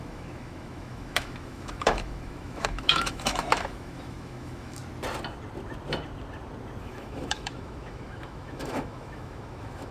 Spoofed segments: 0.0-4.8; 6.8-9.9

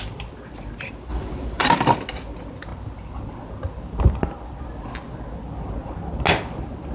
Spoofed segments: 1.1-1.7

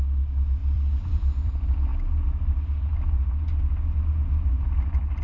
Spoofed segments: 0.6-1.5

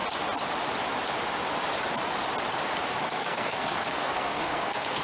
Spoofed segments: 3.0-5.0

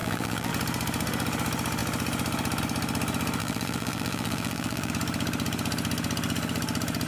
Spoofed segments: 0.0-0.5; 3.4-4.9

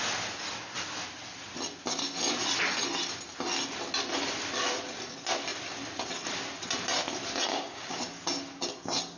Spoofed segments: 7.5-8.0

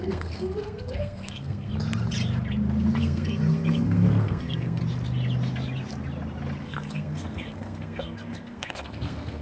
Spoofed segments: 0.0-1.7; 3.0-4.8; 6.6-9.4

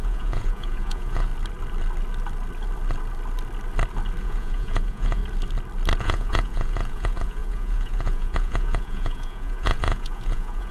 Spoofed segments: 0.0-1.3; 4.2-5.2; 6.0-10.7